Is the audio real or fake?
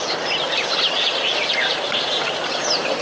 fake